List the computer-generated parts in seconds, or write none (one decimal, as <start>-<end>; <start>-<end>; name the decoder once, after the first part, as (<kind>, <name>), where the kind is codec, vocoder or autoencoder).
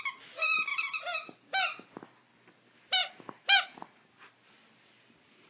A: 0.7-1.5 (vocoder, BigVGAN v2); 3.0-4.3